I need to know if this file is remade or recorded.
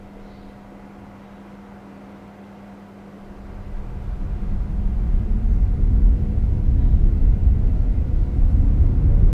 recorded